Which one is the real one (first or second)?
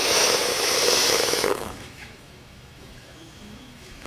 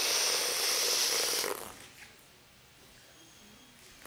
second